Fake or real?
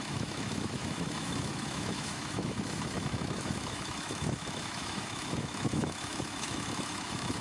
fake